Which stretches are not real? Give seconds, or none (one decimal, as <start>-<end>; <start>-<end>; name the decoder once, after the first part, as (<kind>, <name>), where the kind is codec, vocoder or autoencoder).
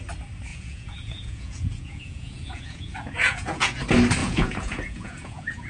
0.5-3.8 (vocoder, Vocos); 4.2-5.7